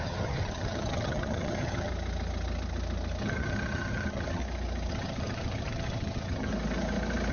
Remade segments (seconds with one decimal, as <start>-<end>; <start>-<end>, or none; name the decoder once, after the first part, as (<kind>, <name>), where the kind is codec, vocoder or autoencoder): 0.0-1.9 (vocoder, HiFi-GAN); 3.2-4.4; 4.9-6.5